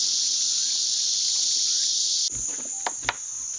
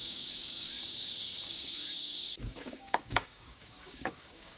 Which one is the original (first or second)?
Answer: first